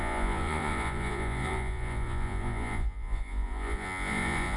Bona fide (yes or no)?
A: no